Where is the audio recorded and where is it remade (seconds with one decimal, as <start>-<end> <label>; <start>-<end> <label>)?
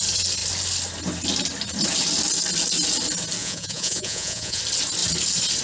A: 0.0-3.4 recorded; 3.4-4.6 remade; 4.6-5.6 recorded